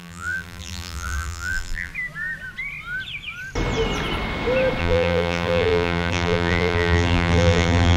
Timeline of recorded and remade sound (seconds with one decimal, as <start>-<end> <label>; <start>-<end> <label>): 0.0-1.9 remade; 1.9-4.8 recorded; 4.8-8.0 remade